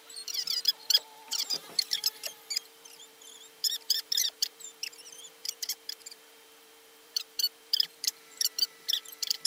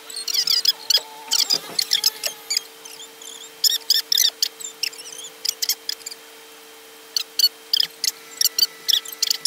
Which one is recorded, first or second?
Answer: second